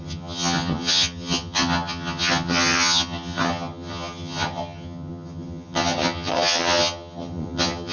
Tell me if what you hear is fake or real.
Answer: fake